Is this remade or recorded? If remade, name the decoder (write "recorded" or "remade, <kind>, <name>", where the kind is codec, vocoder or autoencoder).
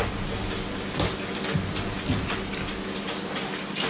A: recorded